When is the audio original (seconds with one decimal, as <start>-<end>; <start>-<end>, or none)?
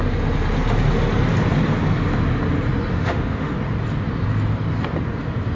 0.0-2.9; 3.5-5.5